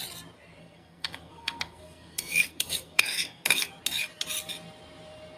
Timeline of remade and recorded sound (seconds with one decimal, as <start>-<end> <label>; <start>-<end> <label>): 0.0-0.6 recorded; 0.6-3.7 remade; 3.7-5.4 recorded